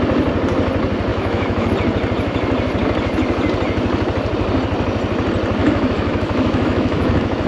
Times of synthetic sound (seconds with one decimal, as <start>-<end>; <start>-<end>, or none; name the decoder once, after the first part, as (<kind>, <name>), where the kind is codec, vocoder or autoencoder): 1.1-1.7 (autoencoder, DAC-VAE); 5.6-7.5